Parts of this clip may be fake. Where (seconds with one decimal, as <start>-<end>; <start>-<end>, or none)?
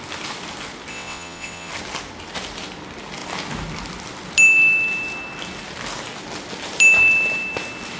0.9-1.7